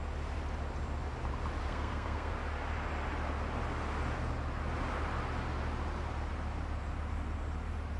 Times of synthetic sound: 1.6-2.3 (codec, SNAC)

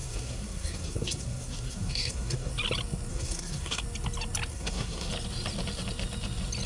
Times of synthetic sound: 0.0-2.5 (codec, SNAC); 3.1-3.8; 4.5-5.1

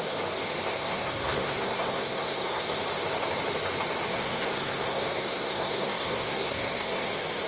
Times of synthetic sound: 0.7-2.6 (codec, SNAC); 4.1-7.1

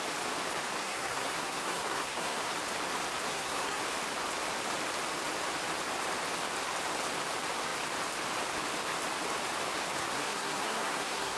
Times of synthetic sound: 0.8-2.4 (codec, SNAC); 3.3-3.8; 10.0-11.4